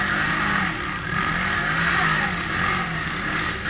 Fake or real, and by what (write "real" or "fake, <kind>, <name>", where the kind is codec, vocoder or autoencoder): real